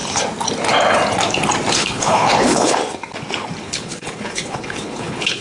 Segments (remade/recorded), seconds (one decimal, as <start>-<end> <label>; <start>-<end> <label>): 0.0-1.7 recorded; 1.7-2.8 remade; 2.8-3.6 recorded; 3.6-5.4 remade